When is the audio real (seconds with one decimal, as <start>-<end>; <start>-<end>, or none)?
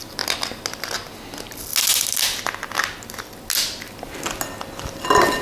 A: 0.0-5.4